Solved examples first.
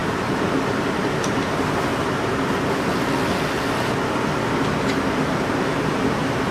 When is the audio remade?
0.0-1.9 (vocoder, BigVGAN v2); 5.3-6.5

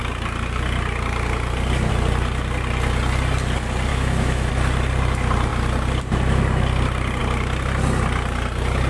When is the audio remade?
3.9-4.5 (autoencoder, DAC-VAE)